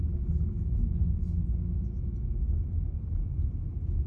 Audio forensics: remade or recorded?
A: recorded